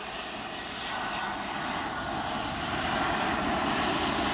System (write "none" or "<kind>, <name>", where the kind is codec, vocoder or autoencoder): none